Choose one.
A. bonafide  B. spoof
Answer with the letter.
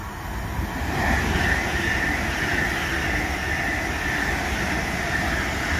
A